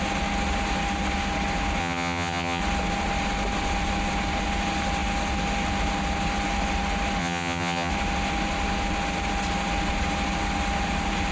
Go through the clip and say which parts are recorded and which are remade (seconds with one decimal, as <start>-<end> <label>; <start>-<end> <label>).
0.0-1.8 recorded; 1.8-2.6 remade; 2.6-7.2 recorded; 7.2-7.9 remade; 7.9-11.3 recorded